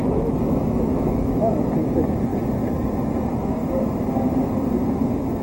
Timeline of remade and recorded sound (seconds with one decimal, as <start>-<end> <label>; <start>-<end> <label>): 0.0-2.3 remade; 2.3-3.0 recorded; 3.0-3.6 remade; 3.6-4.8 recorded; 4.8-5.4 remade